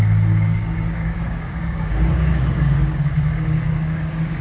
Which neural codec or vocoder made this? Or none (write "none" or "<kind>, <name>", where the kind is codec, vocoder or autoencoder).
codec, DAC